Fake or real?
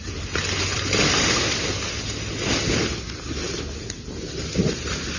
real